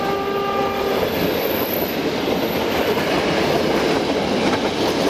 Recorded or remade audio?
recorded